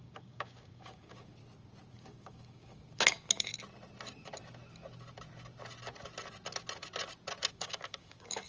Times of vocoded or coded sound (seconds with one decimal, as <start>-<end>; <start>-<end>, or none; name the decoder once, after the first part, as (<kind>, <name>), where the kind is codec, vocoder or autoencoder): 0.0-1.4 (codec, DAC); 1.9-3.5; 7.5-8.5